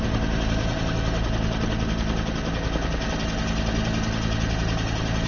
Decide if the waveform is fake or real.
real